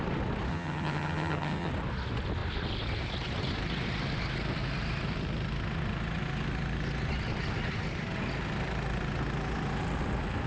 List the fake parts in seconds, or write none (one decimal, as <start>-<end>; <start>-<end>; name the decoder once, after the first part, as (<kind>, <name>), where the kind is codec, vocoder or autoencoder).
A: 0.5-1.7 (vocoder, HiFi-GAN)